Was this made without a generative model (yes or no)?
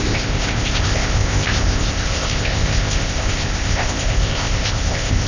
no